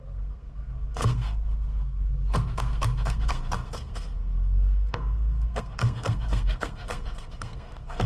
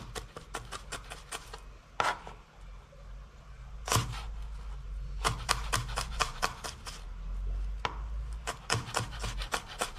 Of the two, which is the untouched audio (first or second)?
second